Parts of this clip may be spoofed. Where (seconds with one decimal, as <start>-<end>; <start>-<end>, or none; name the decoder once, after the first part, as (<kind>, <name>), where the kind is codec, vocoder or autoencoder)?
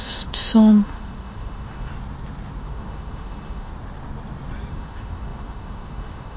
0.0-1.9 (autoencoder, DAC-VAE); 2.6-3.7; 4.7-6.4